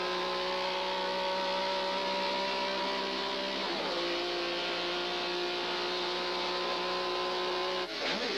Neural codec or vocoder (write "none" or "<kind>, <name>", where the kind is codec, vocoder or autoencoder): none